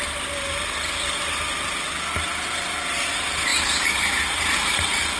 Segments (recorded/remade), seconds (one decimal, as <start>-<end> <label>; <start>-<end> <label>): 0.0-5.2 recorded